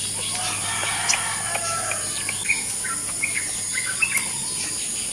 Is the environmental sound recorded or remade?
recorded